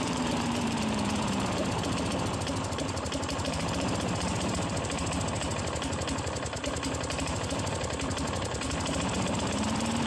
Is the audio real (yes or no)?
no